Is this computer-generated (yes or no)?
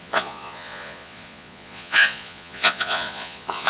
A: yes